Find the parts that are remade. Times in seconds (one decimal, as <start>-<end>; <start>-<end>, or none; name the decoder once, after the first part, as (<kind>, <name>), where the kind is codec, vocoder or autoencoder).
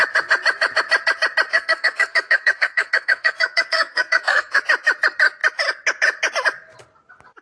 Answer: 1.5-4.6 (codec, SNAC)